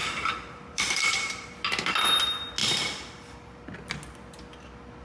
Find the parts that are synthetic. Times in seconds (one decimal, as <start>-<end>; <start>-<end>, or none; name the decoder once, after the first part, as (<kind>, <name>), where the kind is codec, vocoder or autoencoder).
0.0-1.5 (vocoder, BigVGAN v2)

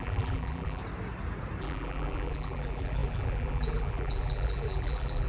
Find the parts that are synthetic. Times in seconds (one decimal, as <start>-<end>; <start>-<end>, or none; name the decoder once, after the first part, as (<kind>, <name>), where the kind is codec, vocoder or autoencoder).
0.0-0.8 (vocoder, BigVGAN v2); 1.6-5.3

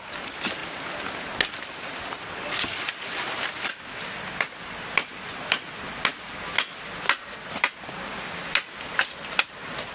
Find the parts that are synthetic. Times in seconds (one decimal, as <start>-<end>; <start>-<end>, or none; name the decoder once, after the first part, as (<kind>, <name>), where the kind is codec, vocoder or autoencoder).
none

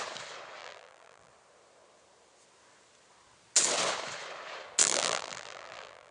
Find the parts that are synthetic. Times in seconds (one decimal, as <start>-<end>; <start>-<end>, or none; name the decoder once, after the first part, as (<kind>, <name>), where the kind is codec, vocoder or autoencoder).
0.6-1.3 (vocoder, BigVGAN v2); 4.8-6.1

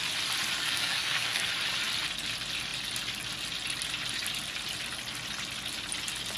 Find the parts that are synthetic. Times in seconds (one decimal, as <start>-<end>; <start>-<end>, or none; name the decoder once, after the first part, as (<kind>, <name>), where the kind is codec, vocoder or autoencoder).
0.6-1.5 (codec, SNAC)

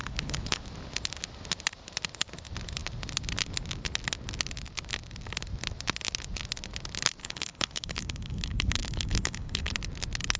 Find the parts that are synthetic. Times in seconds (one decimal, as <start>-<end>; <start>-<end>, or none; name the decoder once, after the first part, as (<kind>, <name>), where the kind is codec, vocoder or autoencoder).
0.0-0.6 (codec, HILCodec); 7.2-9.7

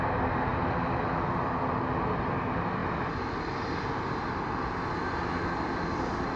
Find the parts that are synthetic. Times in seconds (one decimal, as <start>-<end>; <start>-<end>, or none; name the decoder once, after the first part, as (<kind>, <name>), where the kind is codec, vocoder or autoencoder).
none

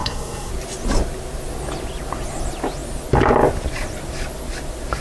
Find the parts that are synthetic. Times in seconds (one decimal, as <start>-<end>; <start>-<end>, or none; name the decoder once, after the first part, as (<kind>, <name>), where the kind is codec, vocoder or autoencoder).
0.0-0.5 (codec, SNAC)